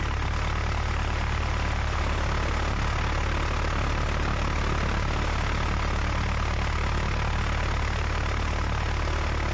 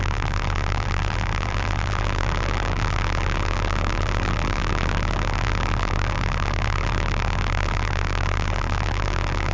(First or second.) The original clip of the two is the first